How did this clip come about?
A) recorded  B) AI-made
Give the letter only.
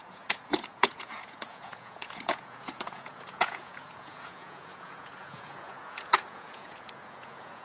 B